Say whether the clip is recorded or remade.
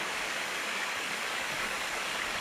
remade